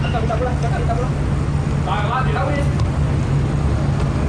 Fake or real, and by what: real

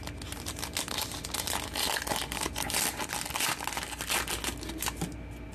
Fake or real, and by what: real